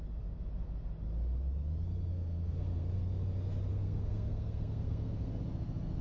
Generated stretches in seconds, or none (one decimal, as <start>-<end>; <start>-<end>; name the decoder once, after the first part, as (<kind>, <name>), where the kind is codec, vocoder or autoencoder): 2.1-3.1 (codec, SNAC); 3.7-5.4